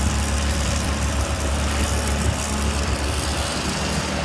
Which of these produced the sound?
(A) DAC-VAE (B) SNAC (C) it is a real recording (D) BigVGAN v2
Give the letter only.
D